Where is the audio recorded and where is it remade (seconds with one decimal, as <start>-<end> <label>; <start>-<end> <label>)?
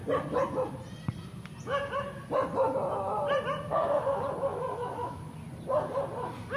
0.0-4.5 recorded; 4.5-5.3 remade; 5.3-6.6 recorded